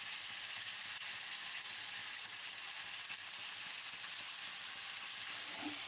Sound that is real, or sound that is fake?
fake